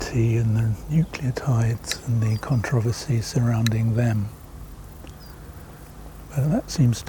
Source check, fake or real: real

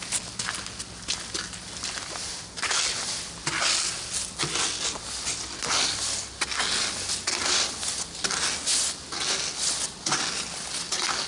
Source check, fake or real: real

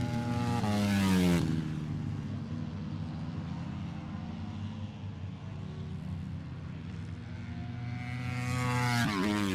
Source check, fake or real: real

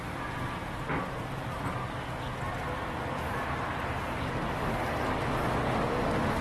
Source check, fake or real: real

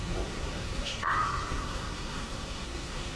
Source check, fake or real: fake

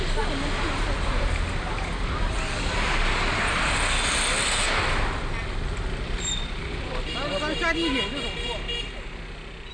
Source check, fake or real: real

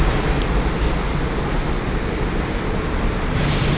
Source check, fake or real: real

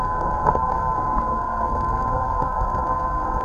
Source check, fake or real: fake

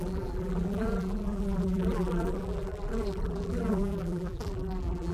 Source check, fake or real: fake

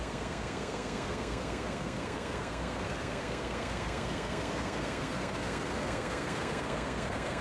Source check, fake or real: fake